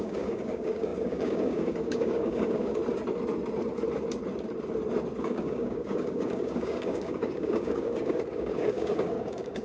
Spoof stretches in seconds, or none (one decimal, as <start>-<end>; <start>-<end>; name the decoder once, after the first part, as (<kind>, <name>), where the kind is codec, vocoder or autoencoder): 0.0-2.8 (codec, DAC); 5.2-9.6